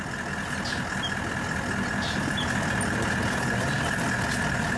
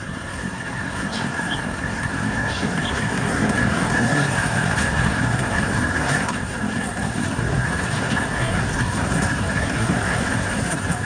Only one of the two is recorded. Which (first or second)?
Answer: first